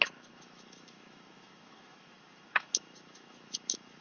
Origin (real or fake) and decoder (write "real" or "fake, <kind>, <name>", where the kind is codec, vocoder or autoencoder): fake, autoencoder, DAC-VAE